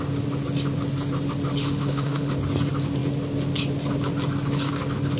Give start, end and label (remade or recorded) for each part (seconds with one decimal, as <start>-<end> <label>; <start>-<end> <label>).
0.0-1.5 recorded; 1.5-2.3 remade; 2.3-5.2 recorded